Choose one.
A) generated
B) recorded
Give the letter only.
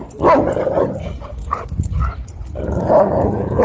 B